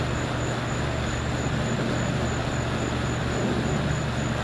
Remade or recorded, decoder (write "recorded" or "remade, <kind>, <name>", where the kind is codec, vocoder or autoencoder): recorded